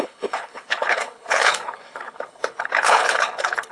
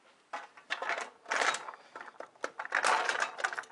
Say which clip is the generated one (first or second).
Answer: first